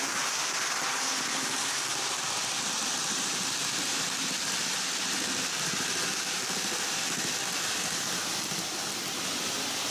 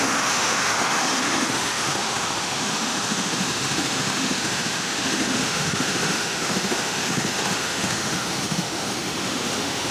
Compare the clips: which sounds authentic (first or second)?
first